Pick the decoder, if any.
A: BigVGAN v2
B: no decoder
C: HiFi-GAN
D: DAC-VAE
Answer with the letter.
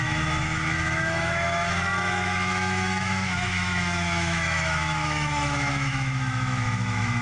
D